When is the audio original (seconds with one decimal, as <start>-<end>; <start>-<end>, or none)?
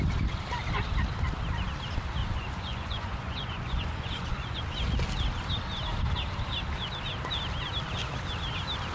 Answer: 0.0-2.2; 4.6-8.9